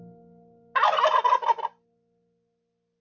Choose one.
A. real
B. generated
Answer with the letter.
A